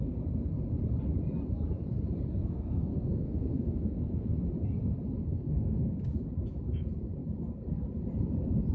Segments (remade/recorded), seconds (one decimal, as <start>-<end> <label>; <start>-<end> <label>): 0.0-2.4 recorded; 2.4-4.4 remade; 4.4-5.2 recorded; 5.2-5.9 remade; 5.9-8.7 recorded

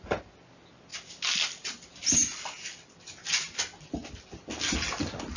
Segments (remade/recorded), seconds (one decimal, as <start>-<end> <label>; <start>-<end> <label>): 0.0-5.4 recorded

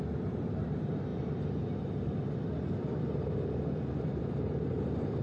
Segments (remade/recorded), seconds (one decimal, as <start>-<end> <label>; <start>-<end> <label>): 0.0-5.2 recorded

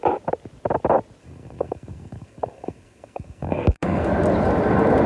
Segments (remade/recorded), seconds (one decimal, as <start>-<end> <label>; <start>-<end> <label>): 0.0-1.2 recorded; 1.2-4.1 remade; 4.1-5.1 recorded

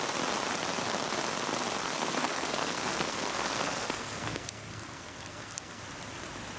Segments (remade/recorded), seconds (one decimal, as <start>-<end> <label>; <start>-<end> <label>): 0.0-1.8 recorded; 1.8-5.8 remade; 5.8-6.6 recorded